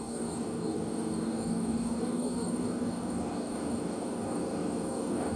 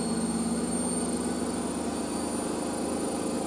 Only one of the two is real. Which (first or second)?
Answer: second